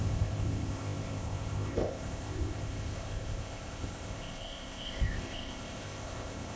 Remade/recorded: remade